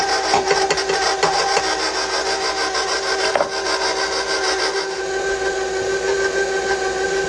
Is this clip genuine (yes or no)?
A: yes